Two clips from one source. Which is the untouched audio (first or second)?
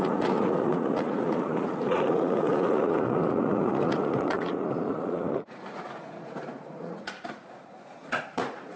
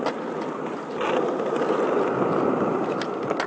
second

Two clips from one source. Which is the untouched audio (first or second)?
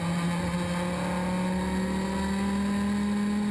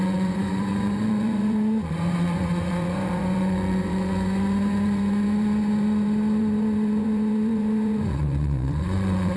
first